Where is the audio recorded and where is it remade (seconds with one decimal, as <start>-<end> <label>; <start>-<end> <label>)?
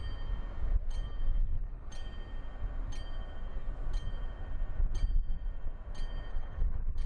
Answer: 0.0-1.4 recorded; 1.4-1.9 remade; 1.9-6.3 recorded; 6.3-7.1 remade